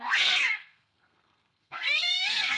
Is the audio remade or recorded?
remade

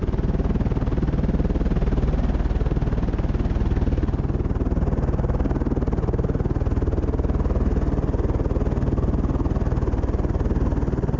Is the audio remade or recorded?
recorded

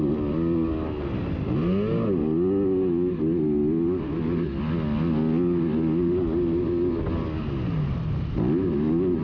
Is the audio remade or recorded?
recorded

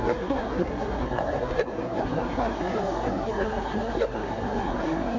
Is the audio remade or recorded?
remade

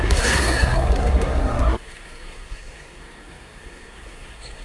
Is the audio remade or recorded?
remade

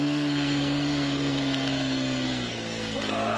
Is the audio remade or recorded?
remade